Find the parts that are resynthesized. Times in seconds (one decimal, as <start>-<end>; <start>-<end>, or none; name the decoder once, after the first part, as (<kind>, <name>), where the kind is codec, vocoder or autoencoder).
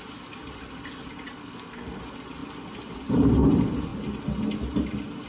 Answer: 1.4-2.0 (codec, SNAC)